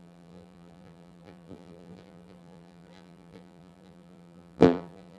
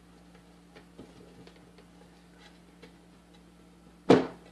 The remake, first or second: first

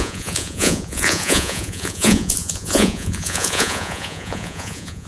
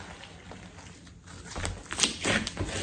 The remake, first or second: first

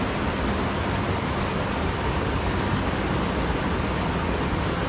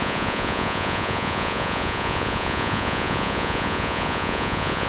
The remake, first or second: second